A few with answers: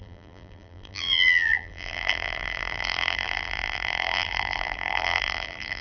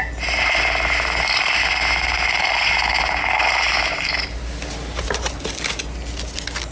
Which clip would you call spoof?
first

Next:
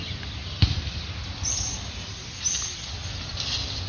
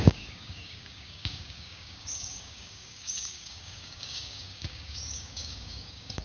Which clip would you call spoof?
second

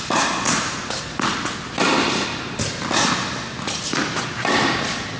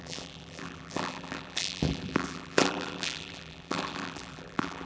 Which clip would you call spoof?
second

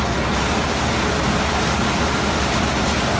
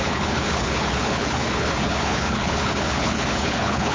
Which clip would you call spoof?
second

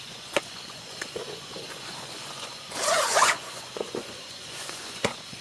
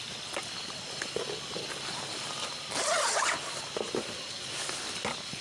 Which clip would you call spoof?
first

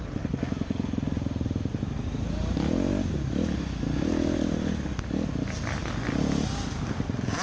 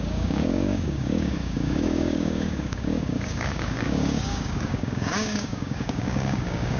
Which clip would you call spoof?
second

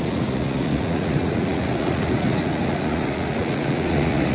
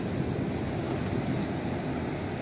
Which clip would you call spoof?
first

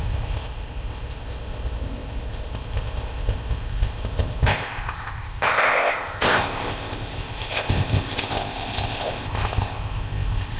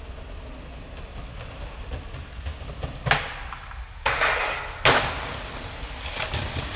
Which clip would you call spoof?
first